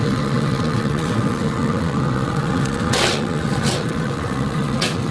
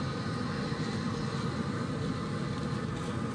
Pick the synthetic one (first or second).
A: first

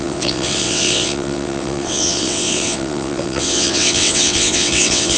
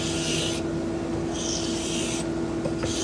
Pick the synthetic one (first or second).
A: first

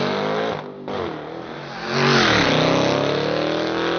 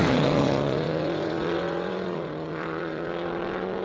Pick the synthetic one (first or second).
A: second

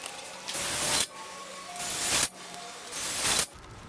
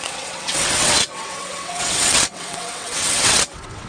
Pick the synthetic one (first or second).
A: second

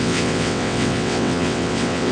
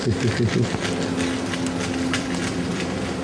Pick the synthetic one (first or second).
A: first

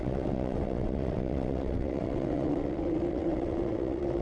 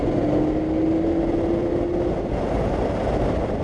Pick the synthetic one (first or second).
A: first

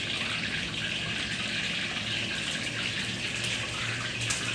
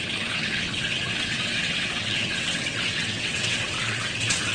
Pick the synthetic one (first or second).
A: second